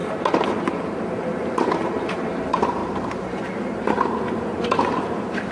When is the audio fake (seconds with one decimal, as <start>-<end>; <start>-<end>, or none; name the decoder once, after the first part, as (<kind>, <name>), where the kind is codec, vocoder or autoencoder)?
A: 1.5-5.5 (vocoder, BigVGAN v2)